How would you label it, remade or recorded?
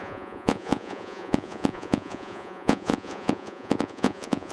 remade